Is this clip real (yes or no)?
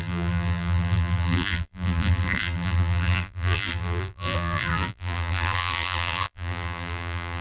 no